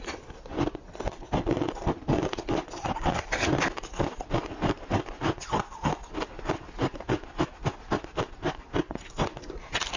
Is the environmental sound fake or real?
real